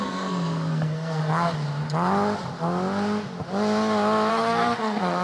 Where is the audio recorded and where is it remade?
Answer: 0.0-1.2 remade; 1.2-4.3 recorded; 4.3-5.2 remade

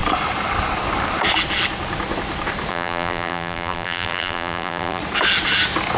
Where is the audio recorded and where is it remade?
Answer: 0.0-2.7 recorded; 2.7-5.0 remade; 5.0-6.0 recorded

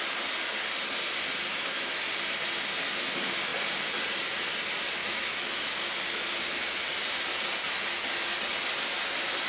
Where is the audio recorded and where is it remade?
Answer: 0.0-1.5 recorded; 1.5-2.0 remade; 2.0-5.0 recorded; 5.0-5.7 remade; 5.7-9.5 recorded

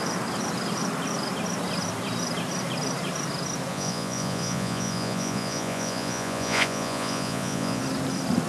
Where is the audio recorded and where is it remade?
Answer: 0.0-3.7 recorded; 3.7-7.8 remade; 7.8-8.5 recorded

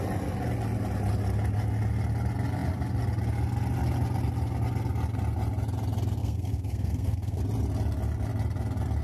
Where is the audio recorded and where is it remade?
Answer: 0.0-6.2 recorded; 6.2-7.4 remade; 7.4-9.0 recorded

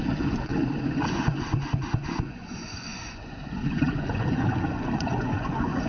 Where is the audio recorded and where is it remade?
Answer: 0.0-0.5 remade; 0.5-1.1 recorded; 1.1-5.9 remade

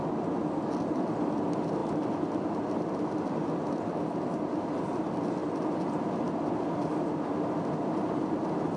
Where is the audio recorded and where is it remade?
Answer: 0.0-8.8 recorded